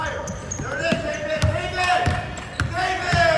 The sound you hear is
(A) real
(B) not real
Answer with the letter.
A